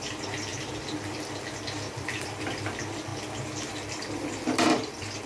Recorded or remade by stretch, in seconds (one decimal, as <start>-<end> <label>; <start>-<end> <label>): 0.0-0.5 remade; 0.5-1.9 recorded; 1.9-3.1 remade; 3.1-4.2 recorded; 4.2-5.3 remade